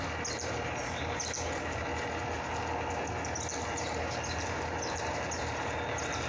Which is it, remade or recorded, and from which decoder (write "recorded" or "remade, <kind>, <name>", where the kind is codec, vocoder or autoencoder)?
recorded